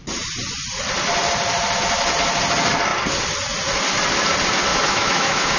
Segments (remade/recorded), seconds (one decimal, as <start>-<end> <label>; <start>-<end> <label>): 0.0-4.7 recorded; 4.7-5.6 remade